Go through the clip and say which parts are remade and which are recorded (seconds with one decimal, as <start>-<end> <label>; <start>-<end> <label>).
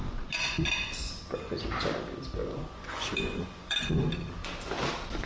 0.0-1.1 remade; 1.1-2.4 recorded; 2.4-4.0 remade; 4.0-5.3 recorded